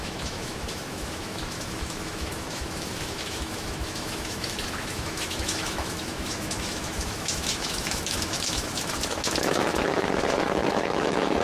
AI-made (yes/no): yes